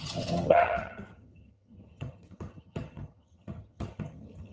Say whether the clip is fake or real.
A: fake